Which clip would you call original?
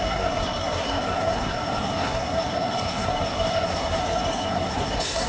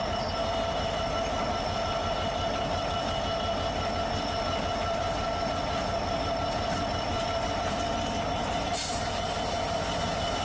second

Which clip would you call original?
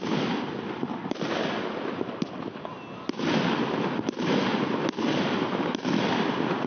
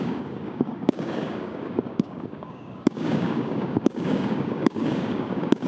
first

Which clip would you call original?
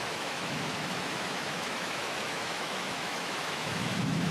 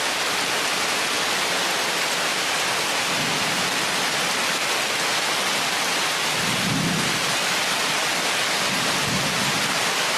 second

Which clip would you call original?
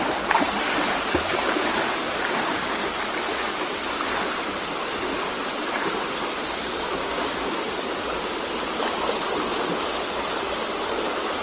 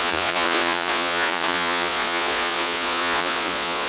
first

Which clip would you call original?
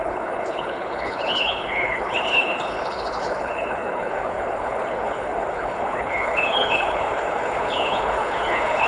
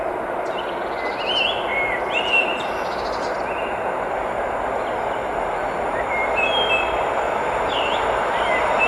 second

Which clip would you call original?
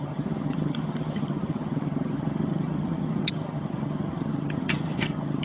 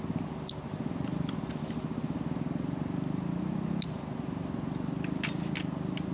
second